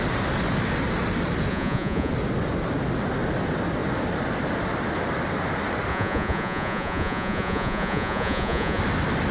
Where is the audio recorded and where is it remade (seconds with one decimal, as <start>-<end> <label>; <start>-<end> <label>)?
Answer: 0.0-1.5 recorded; 1.5-2.1 remade; 2.1-5.9 recorded; 5.9-8.8 remade; 8.8-9.3 recorded